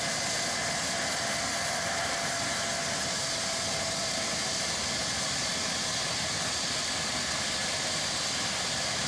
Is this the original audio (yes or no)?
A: yes